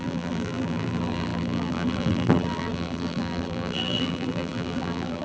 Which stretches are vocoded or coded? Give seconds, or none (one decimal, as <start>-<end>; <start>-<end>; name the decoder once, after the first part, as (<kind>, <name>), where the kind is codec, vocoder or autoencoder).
0.0-5.2 (vocoder, BigVGAN v2)